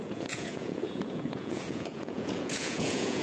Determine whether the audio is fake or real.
fake